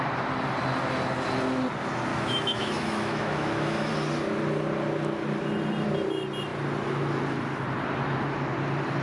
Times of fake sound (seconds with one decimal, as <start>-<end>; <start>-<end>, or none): 2.1-3.9